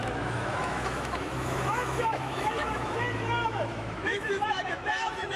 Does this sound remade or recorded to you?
remade